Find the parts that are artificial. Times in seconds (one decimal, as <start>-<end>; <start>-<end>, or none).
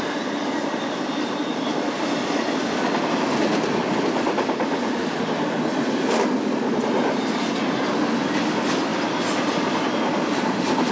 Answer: none